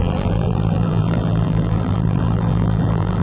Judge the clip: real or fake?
fake